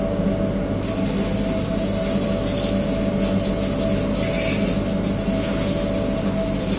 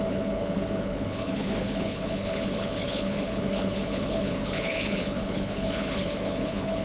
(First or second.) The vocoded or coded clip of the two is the second